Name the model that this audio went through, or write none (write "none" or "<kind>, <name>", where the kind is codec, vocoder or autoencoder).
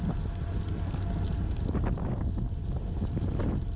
none